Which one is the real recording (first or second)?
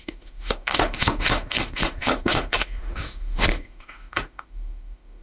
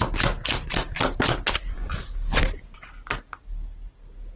second